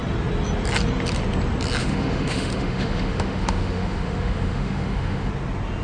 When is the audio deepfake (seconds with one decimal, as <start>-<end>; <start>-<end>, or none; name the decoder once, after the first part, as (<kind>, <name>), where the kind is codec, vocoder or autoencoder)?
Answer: 1.8-5.3 (autoencoder, DAC-VAE)